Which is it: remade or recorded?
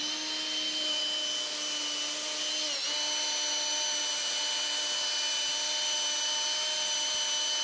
recorded